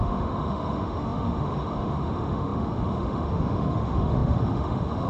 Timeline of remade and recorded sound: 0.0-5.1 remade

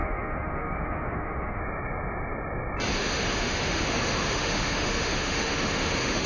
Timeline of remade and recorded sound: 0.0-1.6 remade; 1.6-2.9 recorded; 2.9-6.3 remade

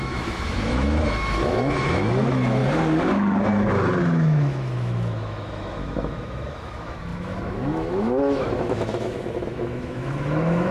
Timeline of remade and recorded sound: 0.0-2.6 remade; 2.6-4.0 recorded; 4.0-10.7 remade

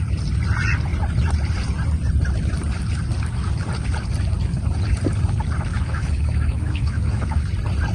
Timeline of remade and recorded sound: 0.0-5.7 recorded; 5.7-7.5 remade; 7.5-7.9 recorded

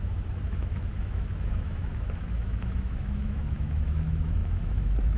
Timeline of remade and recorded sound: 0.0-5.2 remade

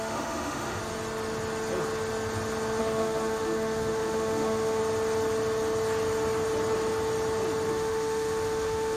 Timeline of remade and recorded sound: 0.0-0.8 remade; 0.8-2.8 recorded; 2.8-4.8 remade; 4.8-7.7 recorded; 7.7-9.0 remade

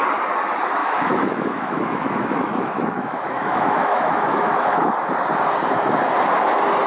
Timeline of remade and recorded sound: 0.0-0.8 recorded; 0.8-4.9 remade; 4.9-6.9 recorded